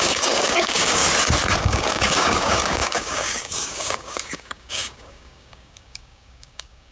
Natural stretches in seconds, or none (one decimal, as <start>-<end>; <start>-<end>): 1.0-1.6